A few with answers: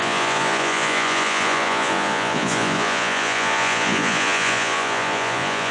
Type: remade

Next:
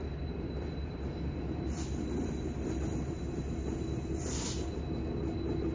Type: recorded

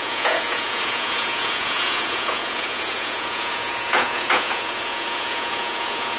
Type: remade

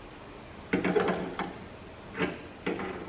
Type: recorded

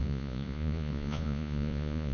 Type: remade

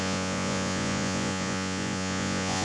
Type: remade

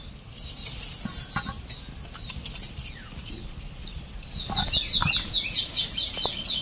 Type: recorded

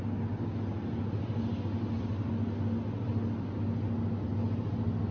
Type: recorded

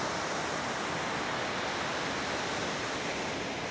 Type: recorded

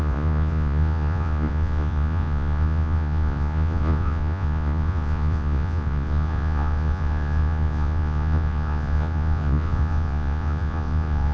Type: remade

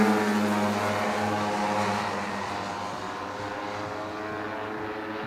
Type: recorded